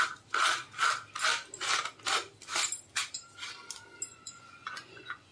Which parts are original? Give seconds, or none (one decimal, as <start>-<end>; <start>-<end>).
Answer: 0.0-4.1